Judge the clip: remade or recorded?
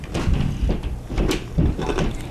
recorded